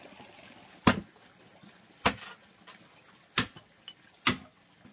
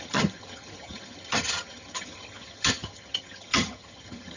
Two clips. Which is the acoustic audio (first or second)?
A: first